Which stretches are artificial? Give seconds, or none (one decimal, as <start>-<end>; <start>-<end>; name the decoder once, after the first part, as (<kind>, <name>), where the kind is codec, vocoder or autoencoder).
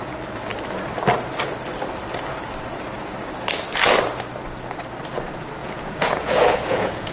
5.6-7.1 (vocoder, Vocos)